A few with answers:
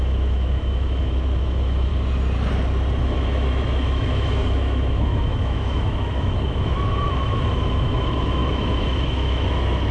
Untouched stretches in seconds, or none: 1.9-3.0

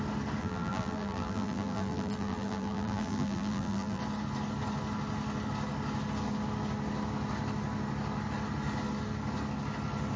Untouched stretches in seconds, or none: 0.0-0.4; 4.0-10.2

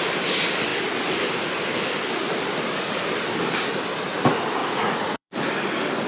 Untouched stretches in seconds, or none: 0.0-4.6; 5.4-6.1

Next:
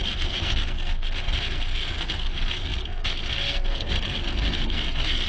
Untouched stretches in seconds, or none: none